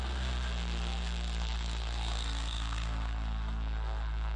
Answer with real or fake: fake